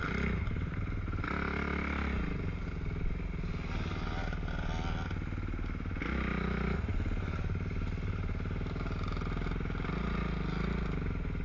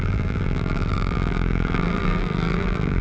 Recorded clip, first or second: first